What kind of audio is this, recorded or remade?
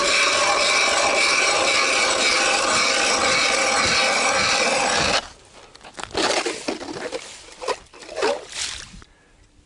recorded